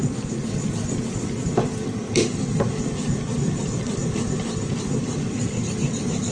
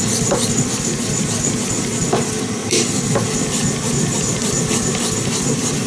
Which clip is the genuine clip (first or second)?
second